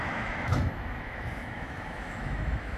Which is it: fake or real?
fake